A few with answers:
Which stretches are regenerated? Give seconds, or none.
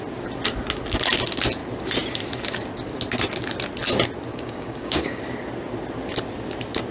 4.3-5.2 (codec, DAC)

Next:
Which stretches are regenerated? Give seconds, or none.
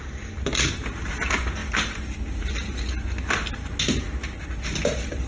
none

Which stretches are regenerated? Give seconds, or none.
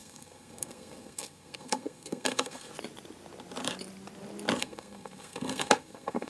0.0-2.7 (codec, SNAC); 4.6-6.3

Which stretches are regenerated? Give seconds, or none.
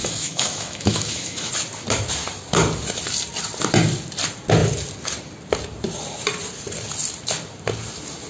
0.0-1.5 (autoencoder, DAC-VAE)